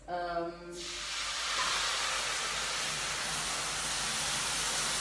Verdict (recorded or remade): recorded